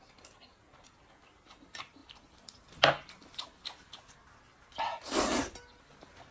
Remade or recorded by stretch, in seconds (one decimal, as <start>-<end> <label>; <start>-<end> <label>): 0.0-6.3 recorded